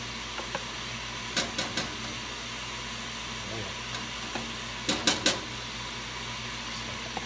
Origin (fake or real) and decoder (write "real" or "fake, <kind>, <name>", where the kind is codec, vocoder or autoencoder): real